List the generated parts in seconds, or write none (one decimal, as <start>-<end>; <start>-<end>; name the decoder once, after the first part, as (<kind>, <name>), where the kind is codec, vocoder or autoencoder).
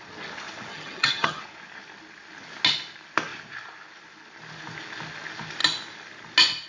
0.7-1.4 (vocoder, HiFi-GAN)